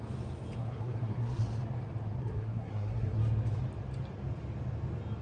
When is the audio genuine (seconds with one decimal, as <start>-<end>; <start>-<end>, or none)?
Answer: 0.0-0.6; 1.4-2.2; 3.2-5.2